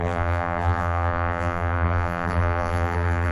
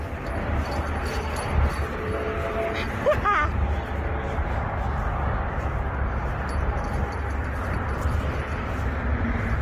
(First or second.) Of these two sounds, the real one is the second